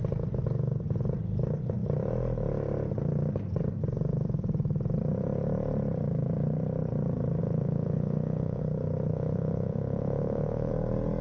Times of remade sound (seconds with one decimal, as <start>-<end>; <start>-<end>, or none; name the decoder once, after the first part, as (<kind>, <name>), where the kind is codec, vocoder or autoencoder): 7.4-8.6 (vocoder, Vocos); 9.1-10.7